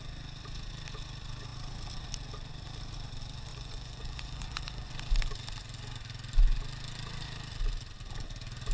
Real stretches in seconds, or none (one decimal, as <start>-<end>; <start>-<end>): 0.0-3.5; 4.9-8.7